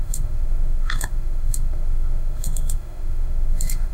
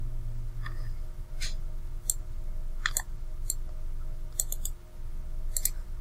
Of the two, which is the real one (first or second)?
second